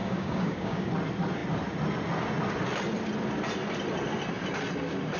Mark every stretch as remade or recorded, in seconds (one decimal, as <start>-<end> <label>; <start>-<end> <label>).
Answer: 0.0-0.9 remade; 0.9-5.2 recorded